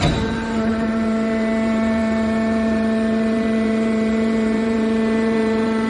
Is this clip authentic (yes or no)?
no